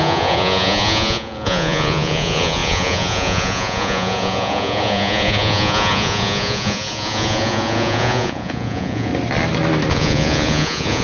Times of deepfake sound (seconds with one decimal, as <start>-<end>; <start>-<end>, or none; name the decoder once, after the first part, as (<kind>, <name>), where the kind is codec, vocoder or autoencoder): 0.0-9.1 (vocoder, Vocos); 9.9-11.0